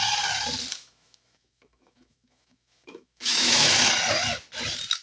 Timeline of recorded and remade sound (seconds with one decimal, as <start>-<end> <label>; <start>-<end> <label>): 0.0-0.7 recorded; 0.7-3.7 remade; 3.7-5.0 recorded